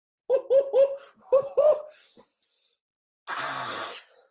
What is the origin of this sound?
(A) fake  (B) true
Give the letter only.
B